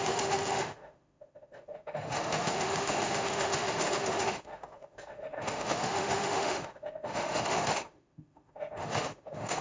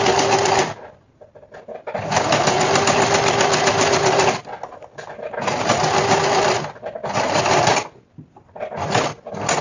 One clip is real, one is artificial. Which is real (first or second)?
second